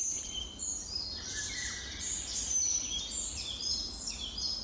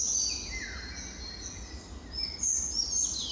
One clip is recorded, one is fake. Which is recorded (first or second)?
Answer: second